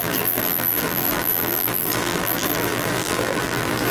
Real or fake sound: fake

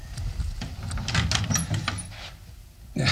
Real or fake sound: real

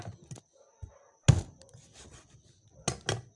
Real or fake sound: real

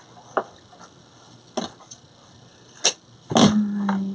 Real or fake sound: real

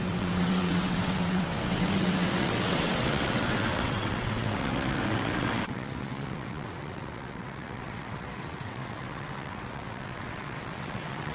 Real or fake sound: fake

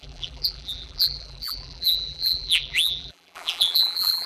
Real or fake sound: fake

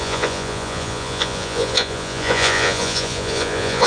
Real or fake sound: fake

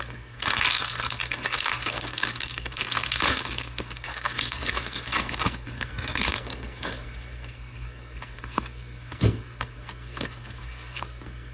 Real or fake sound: fake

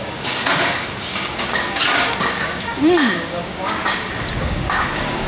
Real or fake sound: fake